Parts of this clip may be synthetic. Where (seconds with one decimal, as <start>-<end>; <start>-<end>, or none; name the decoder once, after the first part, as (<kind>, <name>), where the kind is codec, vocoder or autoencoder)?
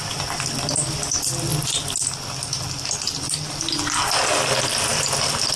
none